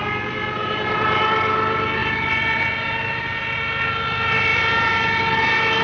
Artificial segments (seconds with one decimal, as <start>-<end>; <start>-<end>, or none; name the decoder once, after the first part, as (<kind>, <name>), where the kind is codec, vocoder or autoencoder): 0.6-1.2 (vocoder, BigVGAN v2); 2.0-3.2; 4.5-5.2